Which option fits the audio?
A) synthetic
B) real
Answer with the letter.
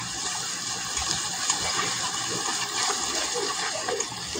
B